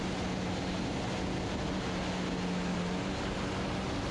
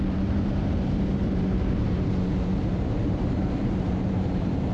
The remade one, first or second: second